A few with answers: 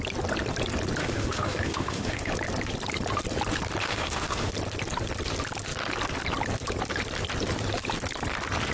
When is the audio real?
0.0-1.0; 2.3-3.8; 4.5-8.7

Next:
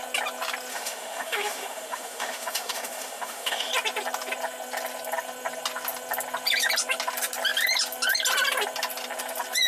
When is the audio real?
0.0-0.7; 3.7-9.7

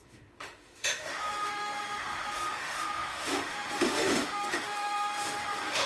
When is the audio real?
none

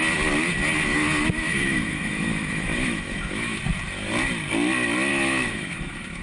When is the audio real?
0.0-0.9; 3.6-5.1

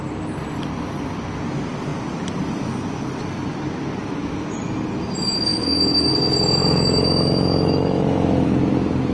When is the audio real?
0.0-4.0; 4.6-5.5; 6.1-6.6; 8.6-9.1

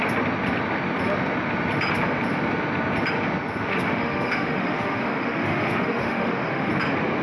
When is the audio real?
0.0-3.7; 6.7-7.2